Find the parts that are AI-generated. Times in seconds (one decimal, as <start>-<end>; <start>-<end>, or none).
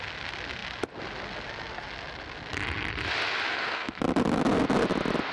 3.5-4.0